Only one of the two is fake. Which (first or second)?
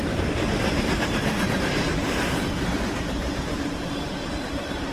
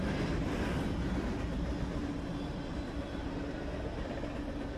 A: first